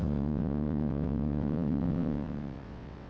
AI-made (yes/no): yes